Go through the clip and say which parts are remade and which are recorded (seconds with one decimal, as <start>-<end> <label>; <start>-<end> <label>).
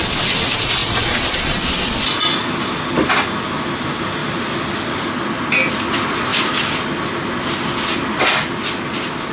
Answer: 0.0-9.3 recorded